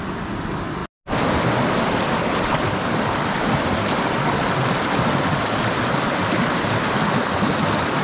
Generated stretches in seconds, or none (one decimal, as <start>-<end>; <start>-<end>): none